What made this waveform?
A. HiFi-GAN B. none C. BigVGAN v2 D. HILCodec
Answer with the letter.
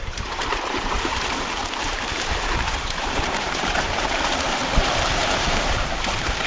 C